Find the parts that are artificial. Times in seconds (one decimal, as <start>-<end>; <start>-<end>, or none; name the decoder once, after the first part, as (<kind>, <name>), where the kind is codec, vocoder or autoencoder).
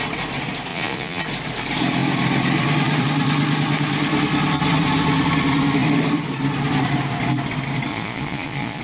0.7-1.2 (vocoder, Vocos); 7.9-8.8